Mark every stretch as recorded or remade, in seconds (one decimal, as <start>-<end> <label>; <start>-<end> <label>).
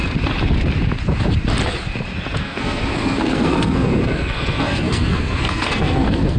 0.0-2.4 recorded; 2.4-6.4 remade